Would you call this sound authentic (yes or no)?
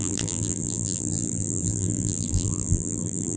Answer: no